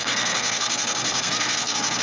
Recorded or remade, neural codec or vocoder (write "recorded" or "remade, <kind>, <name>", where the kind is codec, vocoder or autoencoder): remade, codec, SNAC